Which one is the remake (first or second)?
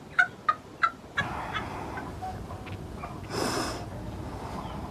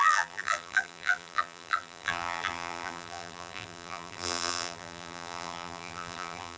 second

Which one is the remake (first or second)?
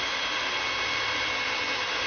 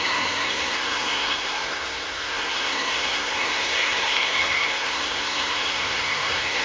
second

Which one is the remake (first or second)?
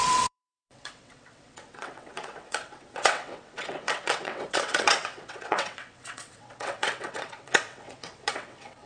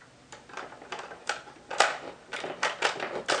first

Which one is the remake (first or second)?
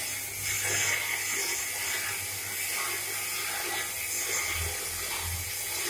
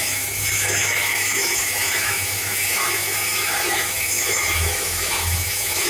second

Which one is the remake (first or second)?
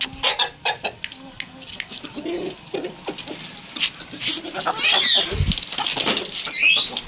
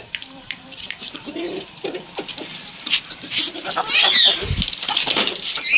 second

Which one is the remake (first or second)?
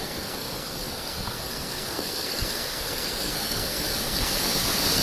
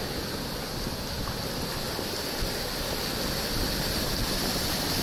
first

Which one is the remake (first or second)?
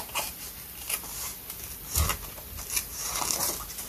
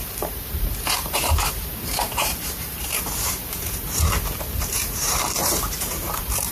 second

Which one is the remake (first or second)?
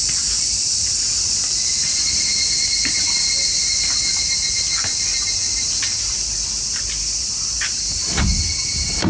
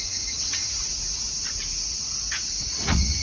second